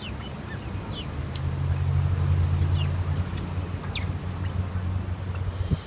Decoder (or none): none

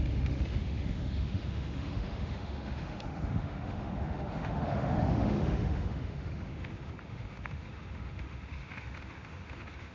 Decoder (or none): autoencoder, DAC-VAE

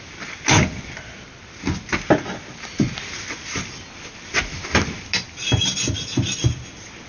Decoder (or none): none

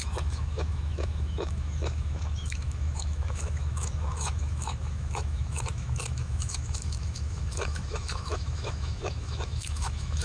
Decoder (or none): autoencoder, DAC-VAE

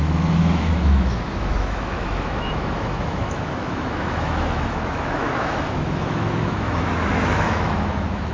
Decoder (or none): autoencoder, DAC-VAE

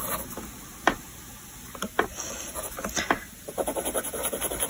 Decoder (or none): none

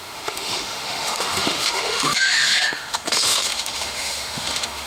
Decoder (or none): autoencoder, DAC-VAE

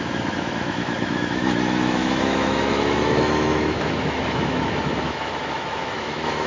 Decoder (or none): autoencoder, DAC-VAE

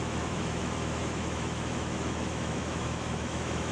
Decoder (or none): autoencoder, DAC-VAE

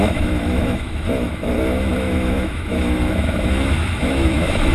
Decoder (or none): autoencoder, DAC-VAE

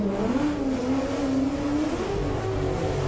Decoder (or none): none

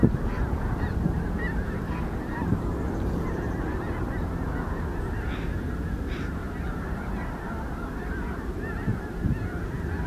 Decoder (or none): none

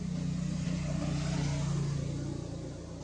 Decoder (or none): none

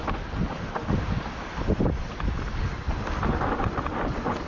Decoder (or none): none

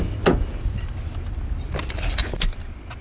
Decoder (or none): none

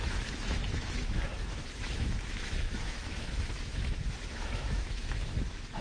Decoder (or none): autoencoder, DAC-VAE